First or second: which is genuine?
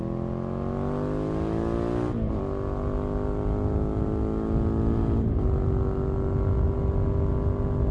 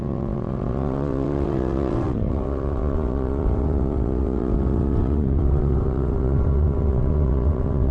first